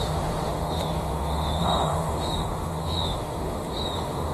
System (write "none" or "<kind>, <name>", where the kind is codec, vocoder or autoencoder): autoencoder, DAC-VAE